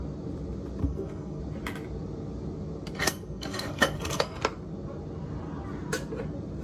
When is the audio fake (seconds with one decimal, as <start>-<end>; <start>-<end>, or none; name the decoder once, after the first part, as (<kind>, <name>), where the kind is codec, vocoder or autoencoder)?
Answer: 0.8-1.4 (codec, SNAC); 3.0-4.4